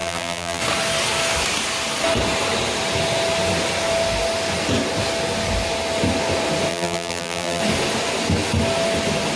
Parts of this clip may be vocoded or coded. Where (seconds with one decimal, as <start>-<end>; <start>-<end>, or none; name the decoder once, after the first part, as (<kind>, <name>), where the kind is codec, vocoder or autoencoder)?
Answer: 0.0-0.6 (vocoder, BigVGAN v2); 6.7-7.6